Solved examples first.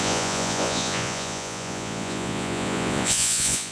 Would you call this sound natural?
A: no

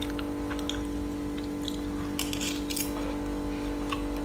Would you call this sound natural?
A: yes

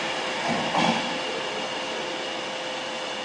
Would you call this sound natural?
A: yes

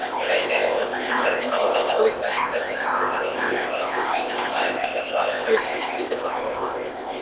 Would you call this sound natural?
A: no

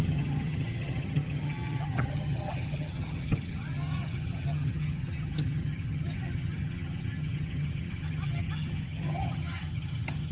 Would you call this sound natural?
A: no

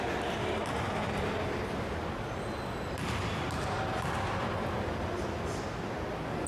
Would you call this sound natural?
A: yes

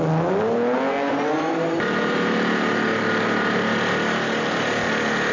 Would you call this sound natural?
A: yes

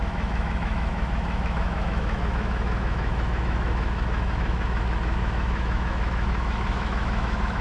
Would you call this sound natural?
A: no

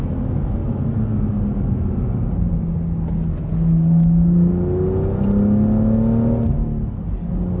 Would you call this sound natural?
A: yes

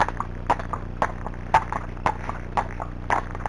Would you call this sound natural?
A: yes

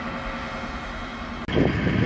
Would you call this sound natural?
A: yes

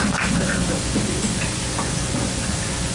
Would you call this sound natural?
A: no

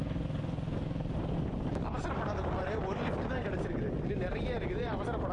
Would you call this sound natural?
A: yes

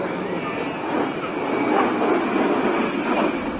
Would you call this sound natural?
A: yes